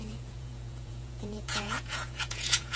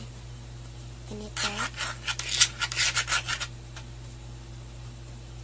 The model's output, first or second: first